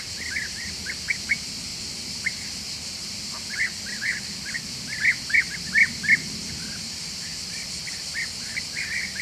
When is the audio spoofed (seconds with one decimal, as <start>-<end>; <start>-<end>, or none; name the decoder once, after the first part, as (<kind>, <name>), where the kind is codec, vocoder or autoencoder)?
none